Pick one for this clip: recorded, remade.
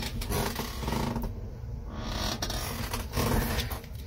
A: recorded